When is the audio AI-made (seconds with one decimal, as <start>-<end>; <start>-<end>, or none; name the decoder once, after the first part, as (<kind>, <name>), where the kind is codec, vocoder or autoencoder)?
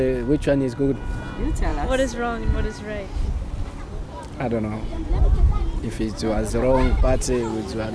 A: 4.9-6.2 (vocoder, BigVGAN v2)